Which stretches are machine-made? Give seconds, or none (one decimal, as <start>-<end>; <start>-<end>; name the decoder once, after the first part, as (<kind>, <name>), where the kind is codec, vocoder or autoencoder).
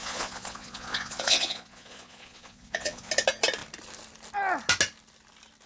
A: 0.0-3.1 (vocoder, Vocos)